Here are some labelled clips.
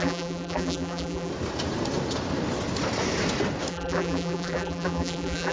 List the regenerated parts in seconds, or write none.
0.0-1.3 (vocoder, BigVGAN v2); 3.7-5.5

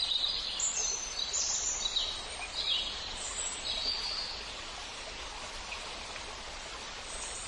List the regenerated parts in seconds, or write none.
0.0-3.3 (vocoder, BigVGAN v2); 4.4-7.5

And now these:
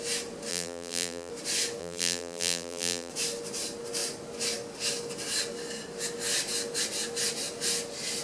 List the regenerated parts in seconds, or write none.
0.5-1.3 (vocoder, BigVGAN v2); 1.8-3.1

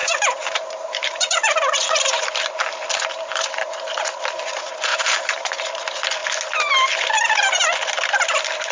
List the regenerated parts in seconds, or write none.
0.0-2.3 (vocoder, BigVGAN v2); 4.9-5.6